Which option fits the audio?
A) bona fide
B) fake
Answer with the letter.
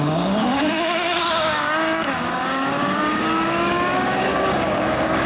B